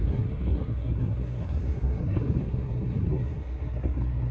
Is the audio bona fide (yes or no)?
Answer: no